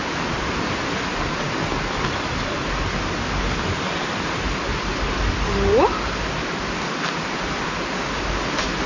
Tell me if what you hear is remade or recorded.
recorded